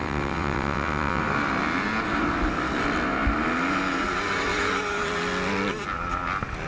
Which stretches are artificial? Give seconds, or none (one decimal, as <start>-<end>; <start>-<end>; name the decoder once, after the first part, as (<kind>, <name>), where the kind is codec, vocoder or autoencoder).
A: 0.0-1.2 (vocoder, WaveNeXt)